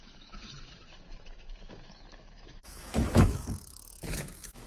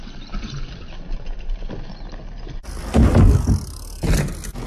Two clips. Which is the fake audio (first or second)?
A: first